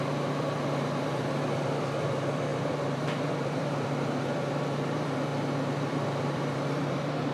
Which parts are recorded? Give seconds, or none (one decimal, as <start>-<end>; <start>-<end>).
5.3-5.9